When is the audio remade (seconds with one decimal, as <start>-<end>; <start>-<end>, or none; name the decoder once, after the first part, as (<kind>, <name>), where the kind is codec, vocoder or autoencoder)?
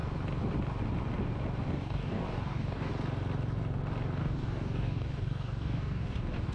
1.7-2.9 (codec, DAC); 4.2-6.5